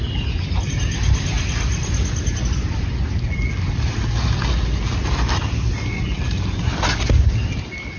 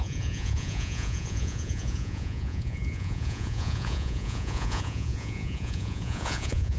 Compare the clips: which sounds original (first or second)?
first